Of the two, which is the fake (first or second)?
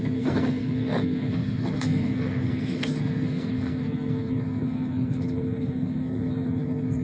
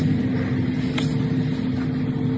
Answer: first